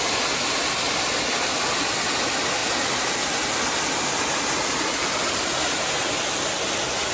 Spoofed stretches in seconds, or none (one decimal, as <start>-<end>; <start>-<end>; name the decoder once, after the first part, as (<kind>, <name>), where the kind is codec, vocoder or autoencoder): none